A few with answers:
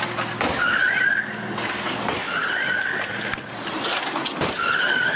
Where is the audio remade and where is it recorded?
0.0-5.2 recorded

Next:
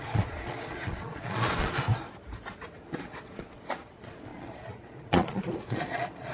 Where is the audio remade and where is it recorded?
0.0-1.9 remade; 1.9-3.0 recorded; 3.0-6.3 remade

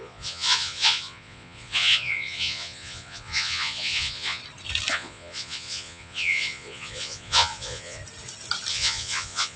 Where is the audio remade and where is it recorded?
0.0-4.4 remade; 4.4-4.9 recorded; 4.9-8.0 remade; 8.0-8.7 recorded; 8.7-9.6 remade

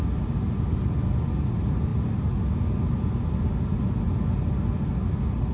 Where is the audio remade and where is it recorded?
0.0-5.5 recorded

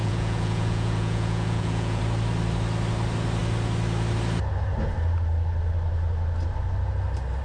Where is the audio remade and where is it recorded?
0.0-2.0 remade; 2.0-7.4 recorded

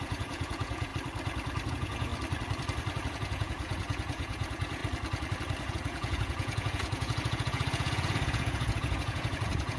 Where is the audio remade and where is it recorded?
0.0-0.9 remade; 0.9-1.7 recorded; 1.7-2.1 remade; 2.1-3.1 recorded; 3.1-4.8 remade; 4.8-5.7 recorded; 5.7-9.8 remade

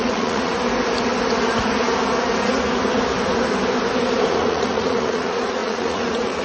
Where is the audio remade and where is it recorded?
0.0-0.5 remade; 0.5-4.3 recorded; 4.3-6.4 remade